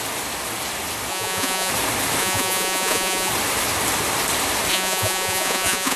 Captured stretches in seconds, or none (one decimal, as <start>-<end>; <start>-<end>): 0.0-1.1; 1.7-2.2; 3.3-4.7